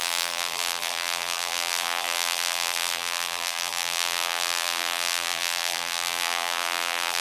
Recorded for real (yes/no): no